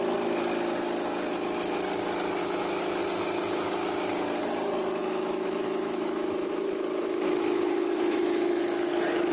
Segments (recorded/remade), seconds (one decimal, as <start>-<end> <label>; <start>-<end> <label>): 0.0-2.4 recorded; 2.4-3.0 remade; 3.0-5.0 recorded; 5.0-8.9 remade; 8.9-9.3 recorded

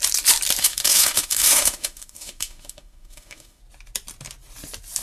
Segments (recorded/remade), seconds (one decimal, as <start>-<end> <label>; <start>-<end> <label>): 0.0-0.6 recorded; 0.6-3.6 remade; 3.6-5.0 recorded

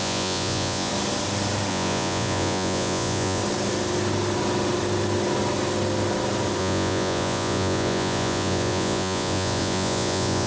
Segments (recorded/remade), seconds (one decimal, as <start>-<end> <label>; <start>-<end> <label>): 0.0-0.9 remade; 0.9-1.7 recorded; 1.7-3.4 remade; 3.4-6.6 recorded; 6.6-10.5 remade